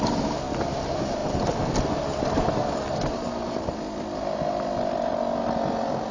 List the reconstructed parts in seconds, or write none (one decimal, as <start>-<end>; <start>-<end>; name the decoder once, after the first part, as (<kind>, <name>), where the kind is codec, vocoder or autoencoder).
none